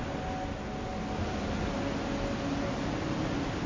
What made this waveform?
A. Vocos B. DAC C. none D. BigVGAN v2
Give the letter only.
C